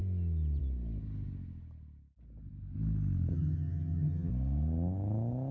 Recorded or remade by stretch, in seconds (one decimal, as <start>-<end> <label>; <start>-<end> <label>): 0.0-3.3 recorded; 3.3-4.3 remade; 4.3-5.5 recorded